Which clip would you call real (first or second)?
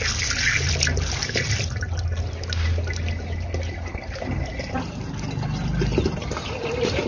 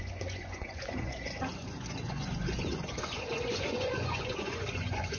first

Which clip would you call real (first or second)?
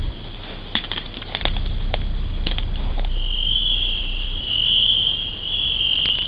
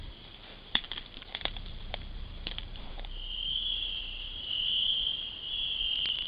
first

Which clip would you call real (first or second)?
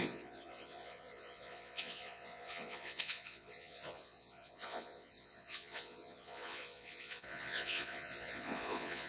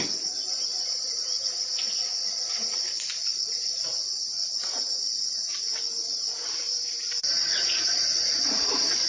second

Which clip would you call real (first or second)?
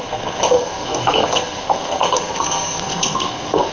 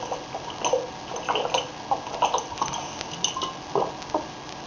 second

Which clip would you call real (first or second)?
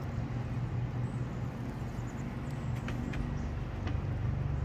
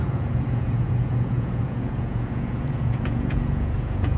first